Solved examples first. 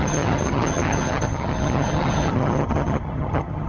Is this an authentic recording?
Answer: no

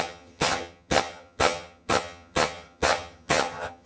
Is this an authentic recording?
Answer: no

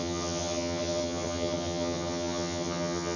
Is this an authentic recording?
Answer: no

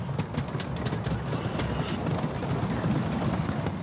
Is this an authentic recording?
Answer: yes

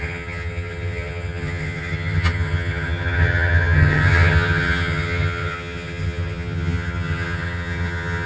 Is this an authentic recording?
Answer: no